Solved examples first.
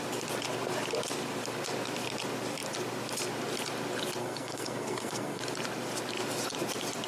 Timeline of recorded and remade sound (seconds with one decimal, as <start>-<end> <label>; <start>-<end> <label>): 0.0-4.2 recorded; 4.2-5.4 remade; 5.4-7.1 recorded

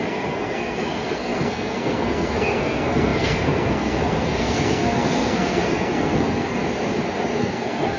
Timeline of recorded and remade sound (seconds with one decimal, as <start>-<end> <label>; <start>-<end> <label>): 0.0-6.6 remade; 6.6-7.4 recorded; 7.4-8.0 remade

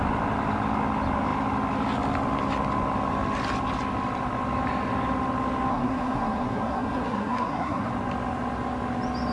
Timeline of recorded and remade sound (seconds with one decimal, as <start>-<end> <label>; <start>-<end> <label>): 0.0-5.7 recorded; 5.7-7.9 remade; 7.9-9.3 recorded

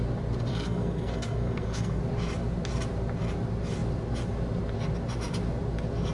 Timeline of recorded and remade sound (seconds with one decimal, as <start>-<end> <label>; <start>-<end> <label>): 0.0-0.5 recorded; 0.5-2.0 remade; 2.0-6.1 recorded

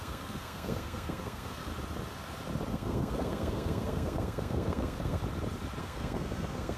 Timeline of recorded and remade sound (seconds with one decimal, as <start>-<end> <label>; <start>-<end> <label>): 0.0-1.7 remade; 1.7-2.7 recorded; 2.7-5.2 remade; 5.2-5.8 recorded; 5.8-6.8 remade